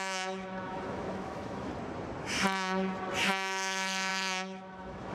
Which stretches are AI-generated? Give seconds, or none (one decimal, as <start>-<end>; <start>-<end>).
0.0-1.7; 3.1-5.1